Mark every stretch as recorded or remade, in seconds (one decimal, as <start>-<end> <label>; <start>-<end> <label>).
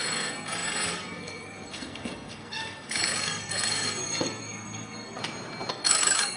0.0-5.2 remade; 5.2-5.7 recorded; 5.7-6.4 remade